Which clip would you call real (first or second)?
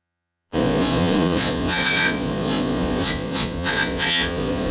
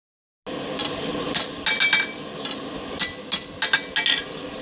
second